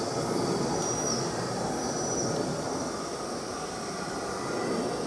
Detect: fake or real real